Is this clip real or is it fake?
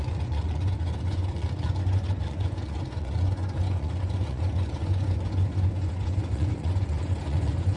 fake